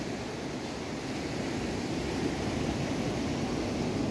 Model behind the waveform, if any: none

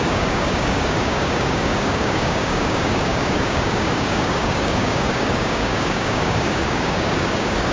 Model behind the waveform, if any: codec, DAC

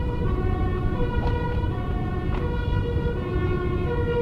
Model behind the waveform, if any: none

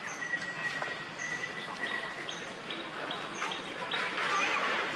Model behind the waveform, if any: none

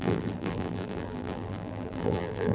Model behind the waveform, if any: vocoder, BigVGAN v2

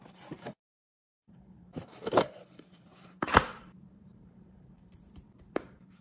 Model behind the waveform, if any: vocoder, BigVGAN v2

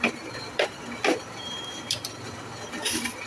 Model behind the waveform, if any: none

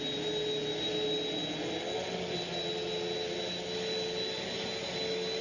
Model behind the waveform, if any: none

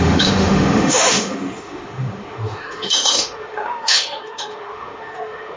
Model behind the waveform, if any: autoencoder, DAC-VAE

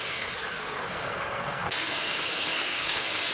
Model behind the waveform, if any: codec, SNAC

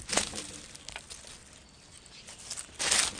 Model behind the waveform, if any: none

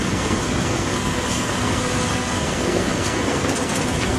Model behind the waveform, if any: codec, SNAC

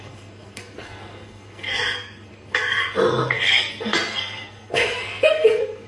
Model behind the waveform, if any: codec, SNAC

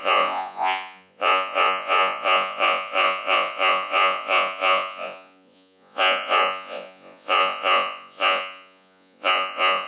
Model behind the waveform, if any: vocoder, Vocos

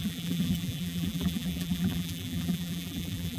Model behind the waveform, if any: vocoder, BigVGAN v2